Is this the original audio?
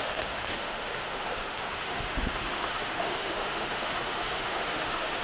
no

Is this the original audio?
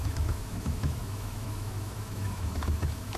no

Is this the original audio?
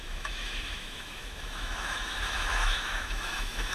no